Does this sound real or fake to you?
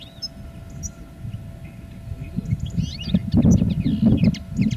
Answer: real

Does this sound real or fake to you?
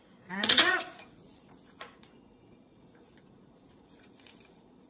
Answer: fake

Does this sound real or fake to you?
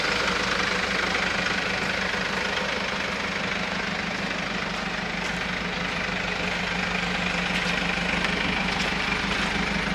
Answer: real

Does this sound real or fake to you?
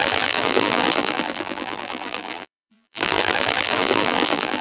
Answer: fake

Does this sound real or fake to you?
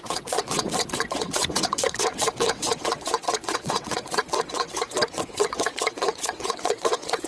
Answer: fake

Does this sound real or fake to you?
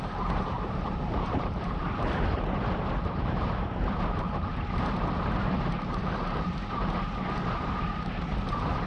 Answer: fake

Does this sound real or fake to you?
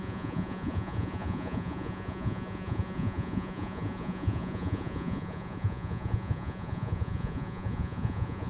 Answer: fake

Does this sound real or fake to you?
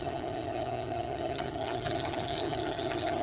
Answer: fake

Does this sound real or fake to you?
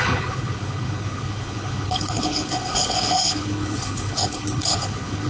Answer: fake